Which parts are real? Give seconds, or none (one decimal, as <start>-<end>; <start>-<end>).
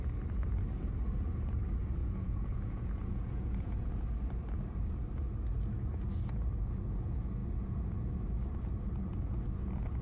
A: 0.0-2.0; 3.9-10.0